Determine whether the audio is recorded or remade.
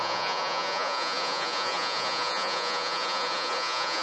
remade